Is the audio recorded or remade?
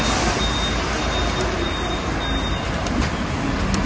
recorded